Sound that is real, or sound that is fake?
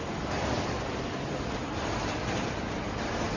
real